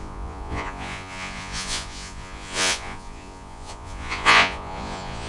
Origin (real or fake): fake